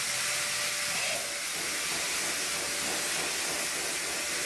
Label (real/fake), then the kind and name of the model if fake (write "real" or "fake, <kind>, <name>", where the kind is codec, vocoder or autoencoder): real